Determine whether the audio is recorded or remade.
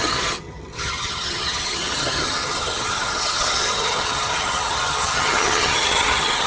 remade